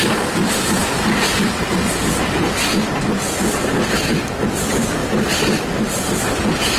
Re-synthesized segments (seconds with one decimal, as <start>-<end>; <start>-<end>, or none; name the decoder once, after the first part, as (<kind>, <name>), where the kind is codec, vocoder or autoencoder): 5.0-5.8 (vocoder, BigVGAN v2)